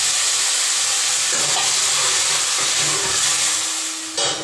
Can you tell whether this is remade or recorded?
recorded